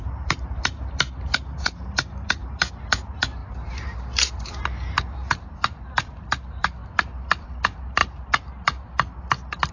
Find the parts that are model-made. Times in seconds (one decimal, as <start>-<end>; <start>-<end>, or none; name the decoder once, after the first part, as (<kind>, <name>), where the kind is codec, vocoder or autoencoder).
0.0-6.8 (vocoder, BigVGAN v2); 7.4-8.0